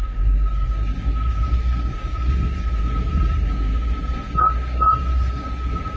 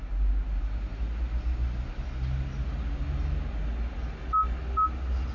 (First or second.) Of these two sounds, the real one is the second